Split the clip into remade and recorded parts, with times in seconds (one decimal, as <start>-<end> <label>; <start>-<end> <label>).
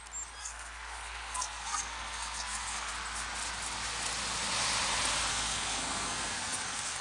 0.0-0.4 recorded; 0.4-2.9 remade; 2.9-5.3 recorded; 5.3-7.0 remade